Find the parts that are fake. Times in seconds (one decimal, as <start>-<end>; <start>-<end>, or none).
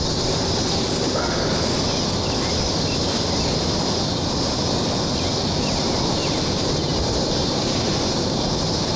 6.9-9.0